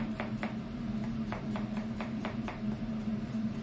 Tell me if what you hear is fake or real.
fake